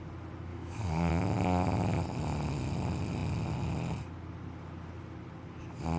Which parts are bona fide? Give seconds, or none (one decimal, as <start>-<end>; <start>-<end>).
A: 0.0-0.5; 1.1-6.0